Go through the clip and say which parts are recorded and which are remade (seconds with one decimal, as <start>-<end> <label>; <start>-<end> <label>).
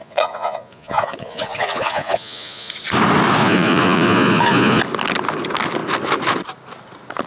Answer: 0.0-2.7 remade; 2.7-3.4 recorded; 3.4-4.8 remade; 4.8-7.3 recorded